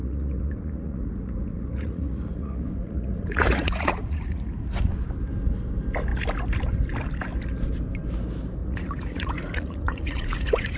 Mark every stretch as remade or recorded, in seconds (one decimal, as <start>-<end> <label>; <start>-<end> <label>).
0.0-4.9 remade; 4.9-8.6 recorded; 8.6-10.8 remade